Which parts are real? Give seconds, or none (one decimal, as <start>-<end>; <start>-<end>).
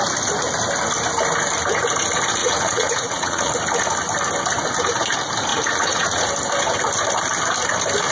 0.0-2.4; 3.5-5.5; 6.3-8.1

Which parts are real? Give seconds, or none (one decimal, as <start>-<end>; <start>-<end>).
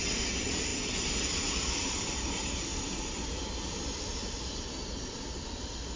0.0-6.0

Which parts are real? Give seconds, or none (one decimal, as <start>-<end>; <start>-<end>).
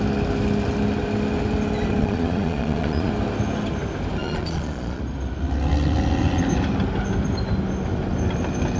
0.0-2.0; 3.1-4.2; 5.0-8.8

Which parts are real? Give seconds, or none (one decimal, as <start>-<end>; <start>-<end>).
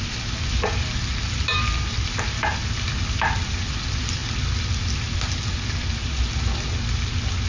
0.0-7.5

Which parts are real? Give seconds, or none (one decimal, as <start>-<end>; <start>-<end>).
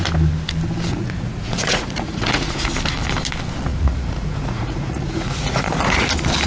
0.0-0.9; 2.7-3.7; 6.1-6.5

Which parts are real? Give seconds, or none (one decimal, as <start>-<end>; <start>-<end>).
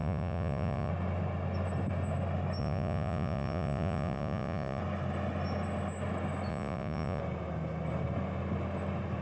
0.9-2.6; 4.8-6.5; 7.2-9.2